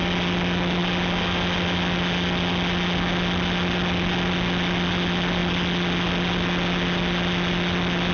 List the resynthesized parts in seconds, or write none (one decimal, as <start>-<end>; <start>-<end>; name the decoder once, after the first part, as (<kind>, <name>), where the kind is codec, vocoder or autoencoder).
none